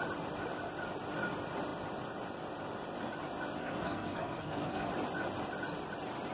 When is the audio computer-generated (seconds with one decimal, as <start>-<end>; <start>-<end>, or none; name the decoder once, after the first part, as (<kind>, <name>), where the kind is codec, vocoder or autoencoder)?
3.6-4.9 (codec, SNAC)